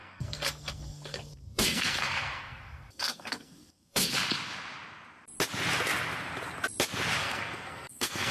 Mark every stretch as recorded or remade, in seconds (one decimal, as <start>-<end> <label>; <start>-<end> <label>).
0.0-4.1 remade; 4.1-7.2 recorded; 7.2-8.3 remade